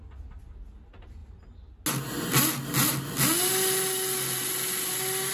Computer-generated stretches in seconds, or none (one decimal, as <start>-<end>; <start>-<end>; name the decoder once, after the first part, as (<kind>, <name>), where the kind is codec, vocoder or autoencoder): none